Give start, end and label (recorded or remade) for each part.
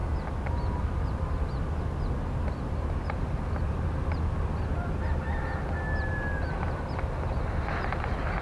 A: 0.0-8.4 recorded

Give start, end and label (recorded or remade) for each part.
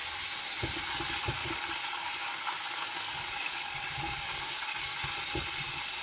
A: 0.0-1.4 recorded; 1.4-5.0 remade; 5.0-6.0 recorded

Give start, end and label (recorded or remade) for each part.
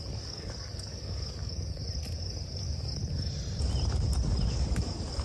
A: 0.0-1.8 remade; 1.8-2.6 recorded; 2.6-3.0 remade; 3.0-4.5 recorded; 4.5-5.2 remade